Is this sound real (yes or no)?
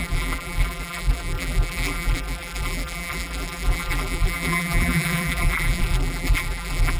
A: no